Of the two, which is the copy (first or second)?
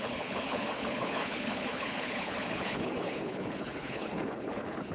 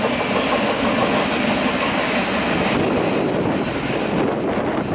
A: first